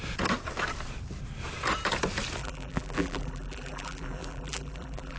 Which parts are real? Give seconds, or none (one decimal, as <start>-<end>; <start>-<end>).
0.0-2.4